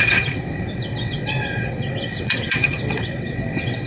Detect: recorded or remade remade